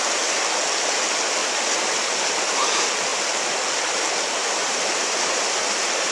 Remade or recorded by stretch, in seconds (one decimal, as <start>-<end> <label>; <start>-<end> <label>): 0.0-4.4 recorded; 4.4-5.4 remade; 5.4-6.1 recorded